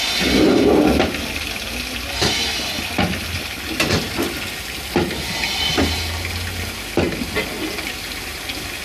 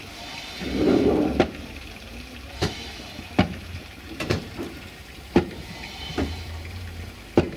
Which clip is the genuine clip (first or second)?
first